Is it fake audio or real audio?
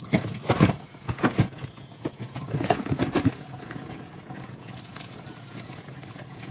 fake